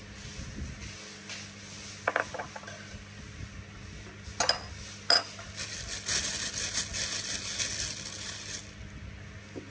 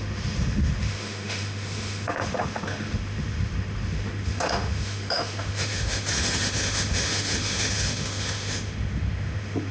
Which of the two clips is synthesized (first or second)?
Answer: second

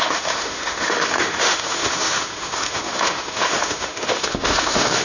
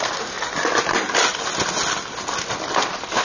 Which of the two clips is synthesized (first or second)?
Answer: first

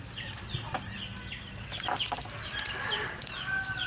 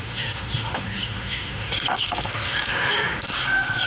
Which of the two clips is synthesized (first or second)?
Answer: second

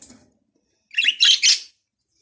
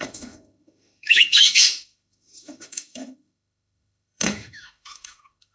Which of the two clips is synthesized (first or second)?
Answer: second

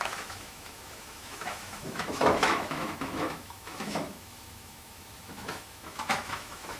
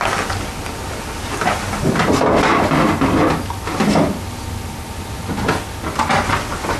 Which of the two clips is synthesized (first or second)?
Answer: first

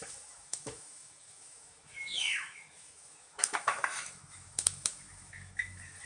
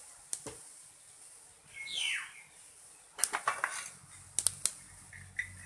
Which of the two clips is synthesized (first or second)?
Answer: first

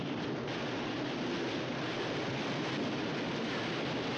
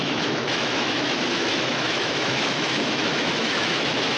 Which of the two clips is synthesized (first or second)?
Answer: second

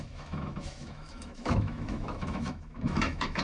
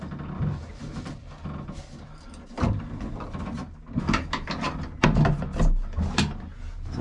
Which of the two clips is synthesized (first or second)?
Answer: first